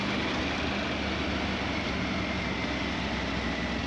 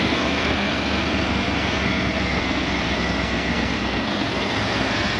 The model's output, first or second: second